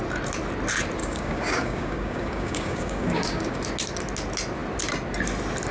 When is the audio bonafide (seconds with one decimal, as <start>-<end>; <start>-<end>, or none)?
0.0-1.0; 3.6-5.7